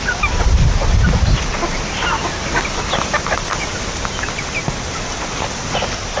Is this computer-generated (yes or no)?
no